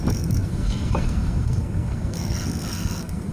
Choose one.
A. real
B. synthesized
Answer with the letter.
B